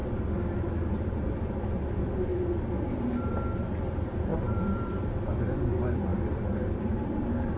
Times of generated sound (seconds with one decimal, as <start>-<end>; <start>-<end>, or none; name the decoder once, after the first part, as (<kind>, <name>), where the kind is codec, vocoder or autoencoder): 0.9-2.3 (vocoder, BigVGAN v2); 3.3-7.6